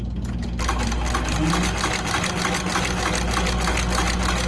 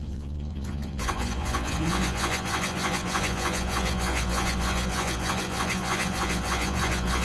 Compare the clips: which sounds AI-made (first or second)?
second